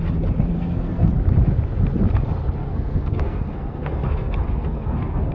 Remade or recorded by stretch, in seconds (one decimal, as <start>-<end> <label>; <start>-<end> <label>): 0.0-0.5 recorded; 0.5-1.1 remade; 1.1-2.6 recorded; 2.6-5.3 remade

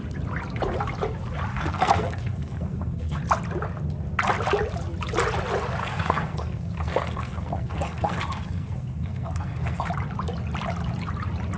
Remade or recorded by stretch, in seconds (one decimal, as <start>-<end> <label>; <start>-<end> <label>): 0.0-1.5 recorded; 1.5-3.2 remade; 3.2-5.8 recorded; 5.8-9.9 remade; 9.9-11.6 recorded